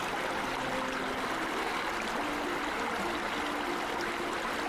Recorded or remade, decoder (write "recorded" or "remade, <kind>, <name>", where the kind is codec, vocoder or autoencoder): recorded